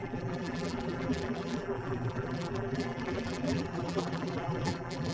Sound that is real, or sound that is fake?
fake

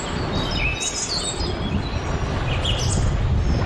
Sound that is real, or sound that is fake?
real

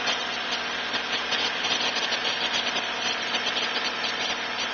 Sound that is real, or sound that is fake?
real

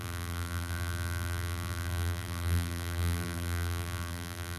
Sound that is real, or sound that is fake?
fake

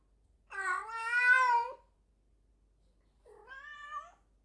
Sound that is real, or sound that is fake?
real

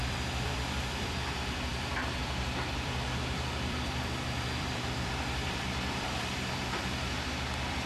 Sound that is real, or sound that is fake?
fake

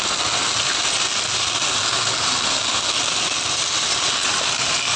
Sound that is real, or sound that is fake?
real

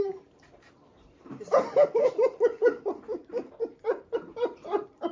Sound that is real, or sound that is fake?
fake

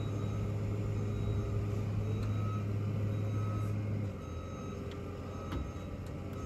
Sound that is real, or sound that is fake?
real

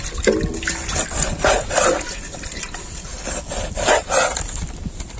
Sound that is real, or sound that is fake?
real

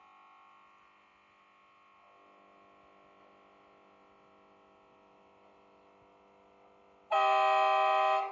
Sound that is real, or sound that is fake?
real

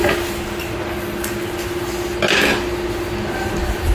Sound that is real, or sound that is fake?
real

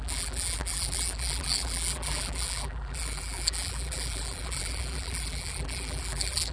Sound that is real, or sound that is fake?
fake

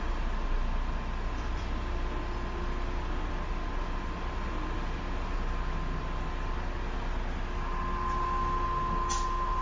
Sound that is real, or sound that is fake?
real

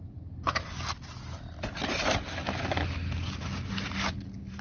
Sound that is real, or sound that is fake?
real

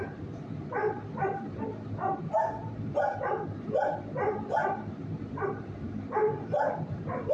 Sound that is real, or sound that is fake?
fake